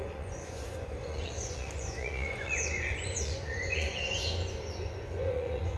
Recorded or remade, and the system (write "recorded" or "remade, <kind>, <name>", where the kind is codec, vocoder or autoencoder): remade, vocoder, Vocos